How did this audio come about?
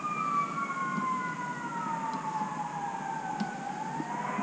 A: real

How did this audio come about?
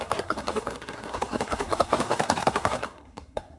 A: fake